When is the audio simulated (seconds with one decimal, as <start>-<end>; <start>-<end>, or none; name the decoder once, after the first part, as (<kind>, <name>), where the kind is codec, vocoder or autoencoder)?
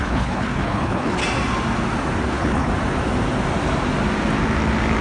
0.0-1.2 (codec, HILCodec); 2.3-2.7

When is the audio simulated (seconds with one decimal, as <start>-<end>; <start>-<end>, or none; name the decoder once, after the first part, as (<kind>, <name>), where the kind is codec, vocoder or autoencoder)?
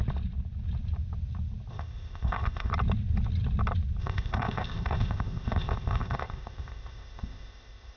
1.7-2.7 (codec, ZipCodec); 4.0-8.0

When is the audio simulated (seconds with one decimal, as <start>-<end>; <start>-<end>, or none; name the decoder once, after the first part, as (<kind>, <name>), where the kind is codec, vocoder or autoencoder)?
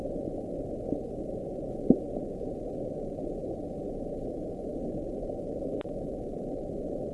none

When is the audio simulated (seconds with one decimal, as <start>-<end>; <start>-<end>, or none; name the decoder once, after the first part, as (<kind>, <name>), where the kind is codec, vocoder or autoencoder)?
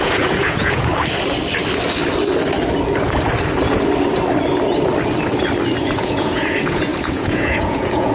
0.0-0.9 (vocoder, Vocos); 5.8-8.1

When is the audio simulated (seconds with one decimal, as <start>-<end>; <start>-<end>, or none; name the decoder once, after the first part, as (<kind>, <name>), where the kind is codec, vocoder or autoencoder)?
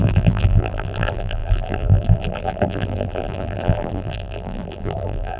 0.0-5.4 (vocoder, BigVGAN v2)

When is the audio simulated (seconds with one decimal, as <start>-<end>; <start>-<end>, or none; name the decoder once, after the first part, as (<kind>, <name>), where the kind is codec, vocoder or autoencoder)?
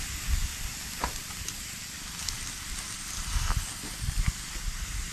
none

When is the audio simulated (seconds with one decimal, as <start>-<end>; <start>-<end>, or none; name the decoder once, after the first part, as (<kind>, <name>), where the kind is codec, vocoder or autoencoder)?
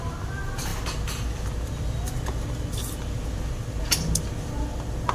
none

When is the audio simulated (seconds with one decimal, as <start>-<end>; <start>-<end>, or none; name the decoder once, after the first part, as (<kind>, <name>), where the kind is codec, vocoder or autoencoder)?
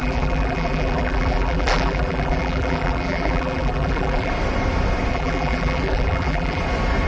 0.0-4.3 (vocoder, BigVGAN v2); 5.1-6.6